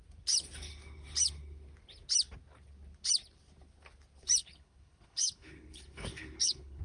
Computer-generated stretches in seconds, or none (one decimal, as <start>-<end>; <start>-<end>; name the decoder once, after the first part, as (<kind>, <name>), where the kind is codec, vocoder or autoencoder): 4.4-6.8 (codec, HILCodec)